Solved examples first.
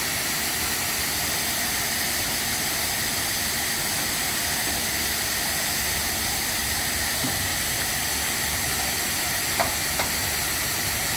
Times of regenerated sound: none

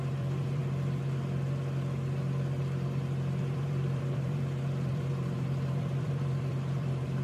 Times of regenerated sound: 0.0-0.6 (vocoder, BigVGAN v2); 3.4-7.2

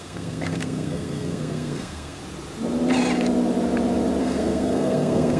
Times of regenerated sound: 0.0-2.2 (codec, SNAC); 4.2-5.4

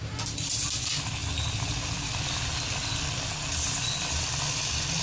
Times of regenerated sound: none

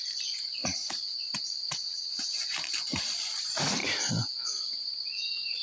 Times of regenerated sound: 0.0-3.8 (vocoder, BigVGAN v2); 4.6-5.6